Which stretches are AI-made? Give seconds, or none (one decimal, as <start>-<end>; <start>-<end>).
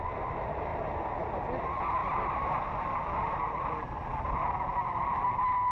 none